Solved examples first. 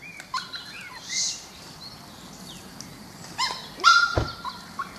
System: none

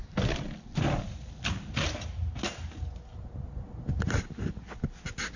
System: none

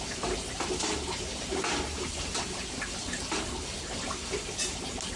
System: none